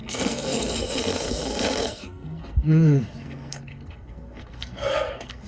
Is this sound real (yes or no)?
no